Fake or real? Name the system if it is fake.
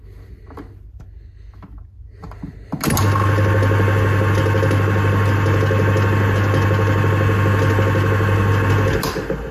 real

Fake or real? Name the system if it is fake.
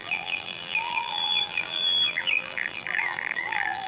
fake, vocoder, BigVGAN v2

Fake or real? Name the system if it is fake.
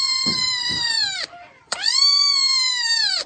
fake, vocoder, BigVGAN v2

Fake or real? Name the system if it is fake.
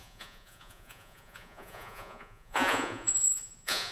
fake, vocoder, Vocos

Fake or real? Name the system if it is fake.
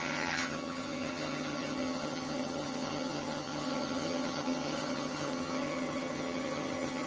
fake, vocoder, HiFi-GAN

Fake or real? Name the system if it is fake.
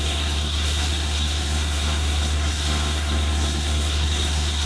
fake, codec, SNAC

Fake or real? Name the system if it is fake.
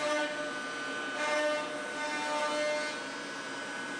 real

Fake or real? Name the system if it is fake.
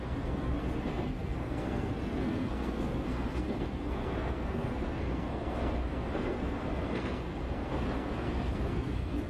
fake, codec, SNAC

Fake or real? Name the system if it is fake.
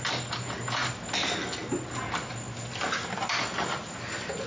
real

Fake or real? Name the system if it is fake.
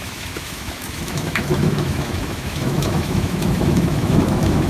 fake, autoencoder, DAC-VAE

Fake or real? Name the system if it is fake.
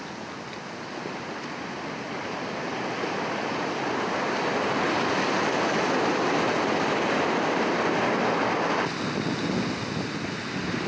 real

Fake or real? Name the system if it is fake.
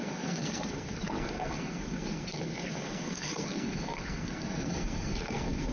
fake, codec, SNAC